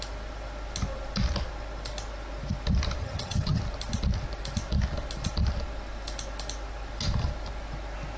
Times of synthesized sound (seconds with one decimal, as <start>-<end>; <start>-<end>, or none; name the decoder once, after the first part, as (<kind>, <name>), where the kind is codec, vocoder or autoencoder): 3.0-3.6 (vocoder, HiFi-GAN)